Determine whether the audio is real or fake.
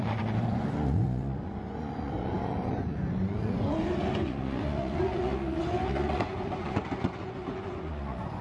fake